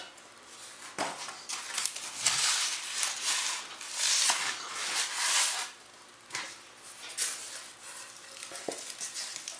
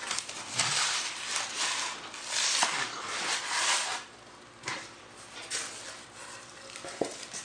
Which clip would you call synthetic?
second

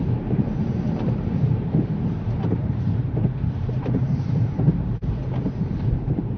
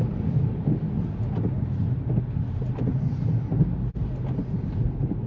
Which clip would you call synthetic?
first